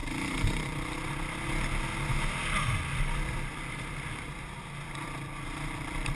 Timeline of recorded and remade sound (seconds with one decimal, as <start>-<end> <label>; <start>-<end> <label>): 0.0-3.5 recorded; 3.5-6.1 remade